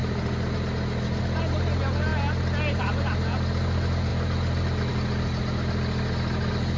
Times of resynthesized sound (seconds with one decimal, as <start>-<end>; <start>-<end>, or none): none